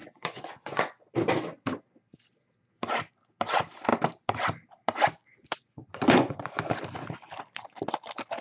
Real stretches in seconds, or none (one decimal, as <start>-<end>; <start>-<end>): 1.1-5.2; 6.5-8.4